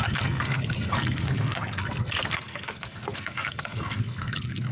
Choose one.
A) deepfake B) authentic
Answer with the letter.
A